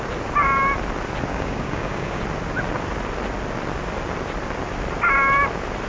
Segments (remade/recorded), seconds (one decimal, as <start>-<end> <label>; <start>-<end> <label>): 0.0-1.3 recorded; 1.3-2.2 remade; 2.2-5.9 recorded